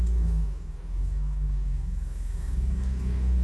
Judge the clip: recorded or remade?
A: remade